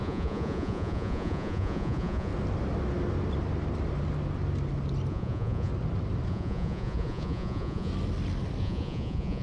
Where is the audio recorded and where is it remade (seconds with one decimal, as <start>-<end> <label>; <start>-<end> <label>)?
0.0-2.3 remade; 2.3-5.1 recorded; 5.1-5.7 remade; 5.7-6.3 recorded; 6.3-7.9 remade; 7.9-8.6 recorded; 8.6-9.4 remade